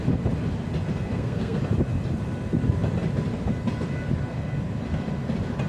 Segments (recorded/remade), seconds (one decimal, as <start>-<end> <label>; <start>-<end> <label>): 0.0-1.1 recorded; 1.1-1.6 remade; 1.6-5.7 recorded